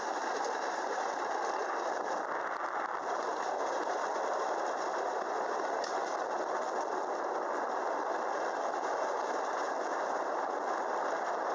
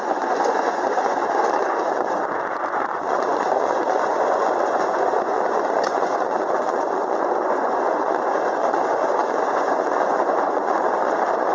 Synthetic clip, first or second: second